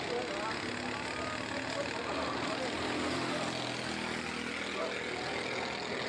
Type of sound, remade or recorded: recorded